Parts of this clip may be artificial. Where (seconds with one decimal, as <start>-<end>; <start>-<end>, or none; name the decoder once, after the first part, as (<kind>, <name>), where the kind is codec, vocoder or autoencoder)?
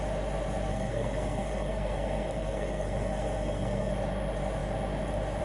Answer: 0.7-3.9 (codec, SNAC)